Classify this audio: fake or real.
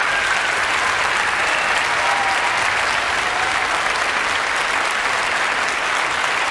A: real